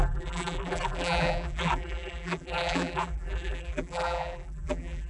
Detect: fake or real fake